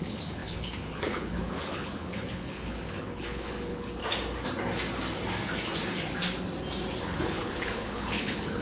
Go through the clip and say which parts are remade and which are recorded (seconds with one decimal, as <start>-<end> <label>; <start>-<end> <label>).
0.0-4.0 remade; 4.0-7.0 recorded; 7.0-8.6 remade